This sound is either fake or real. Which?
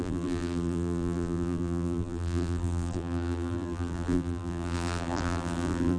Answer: fake